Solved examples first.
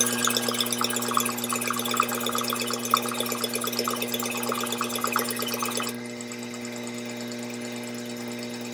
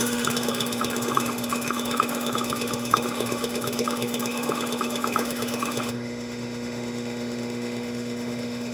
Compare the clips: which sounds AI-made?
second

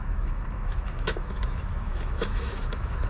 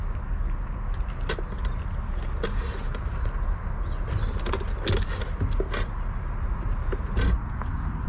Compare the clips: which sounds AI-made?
first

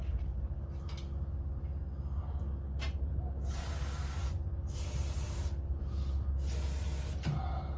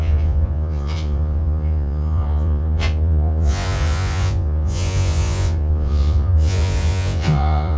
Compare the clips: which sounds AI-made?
second